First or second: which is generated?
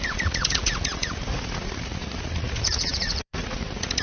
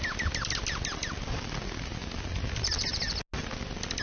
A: first